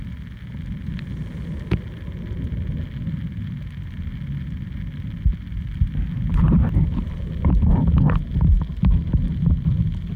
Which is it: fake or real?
real